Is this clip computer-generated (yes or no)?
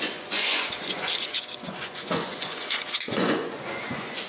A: yes